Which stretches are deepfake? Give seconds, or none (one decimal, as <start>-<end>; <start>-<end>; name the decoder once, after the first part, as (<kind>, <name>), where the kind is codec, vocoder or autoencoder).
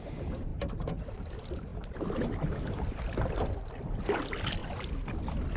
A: none